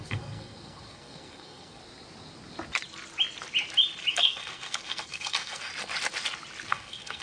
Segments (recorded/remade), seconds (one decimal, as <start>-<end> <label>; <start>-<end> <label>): 0.0-1.8 remade; 1.8-4.1 recorded; 4.1-5.7 remade; 5.7-6.7 recorded; 6.7-7.2 remade